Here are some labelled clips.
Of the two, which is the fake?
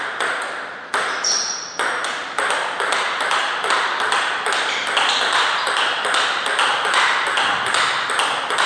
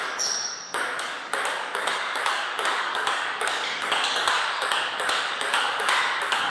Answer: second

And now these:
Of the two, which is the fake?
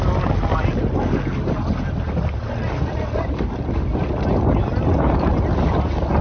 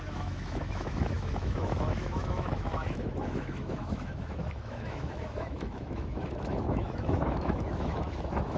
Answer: second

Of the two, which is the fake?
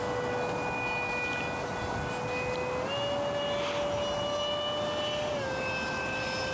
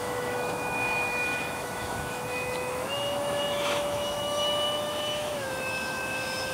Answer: second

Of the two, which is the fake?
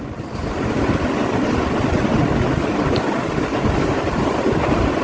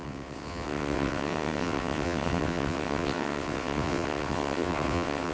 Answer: second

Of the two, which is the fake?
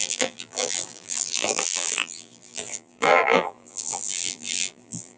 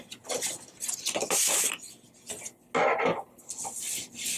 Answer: first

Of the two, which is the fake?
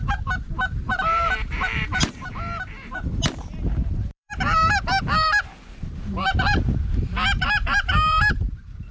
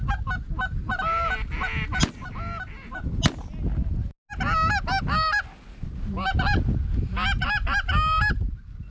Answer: first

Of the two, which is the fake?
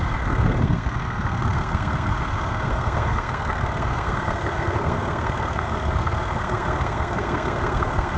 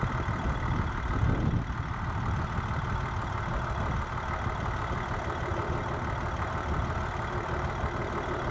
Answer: first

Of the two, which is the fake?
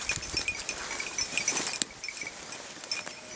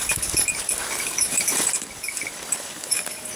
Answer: second